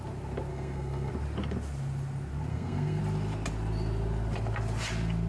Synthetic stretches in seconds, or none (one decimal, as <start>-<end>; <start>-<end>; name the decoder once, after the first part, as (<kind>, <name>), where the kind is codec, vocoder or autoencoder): 0.5-1.1 (codec, SNAC); 2.5-3.0